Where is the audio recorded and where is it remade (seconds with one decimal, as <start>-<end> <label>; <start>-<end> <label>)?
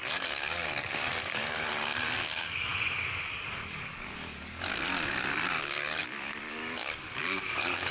0.0-2.7 remade; 2.7-3.4 recorded; 3.4-4.7 remade; 4.7-5.6 recorded; 5.6-7.9 remade